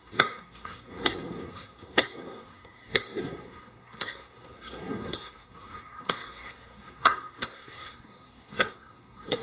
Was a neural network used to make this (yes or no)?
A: yes